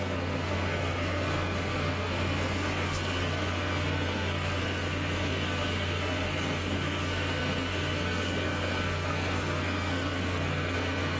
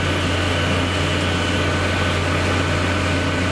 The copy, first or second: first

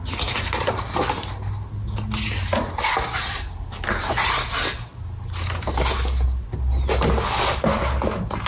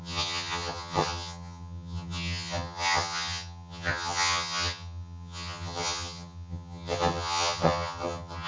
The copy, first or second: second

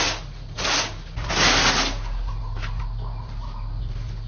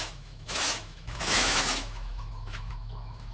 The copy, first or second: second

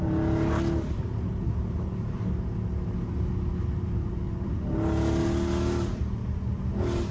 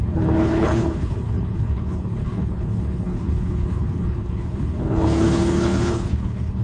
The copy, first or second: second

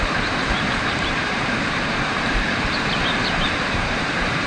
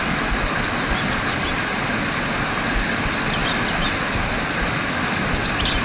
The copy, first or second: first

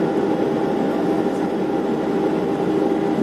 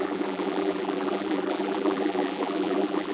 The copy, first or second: second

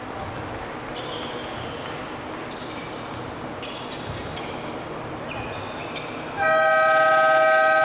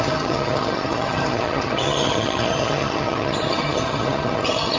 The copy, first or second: second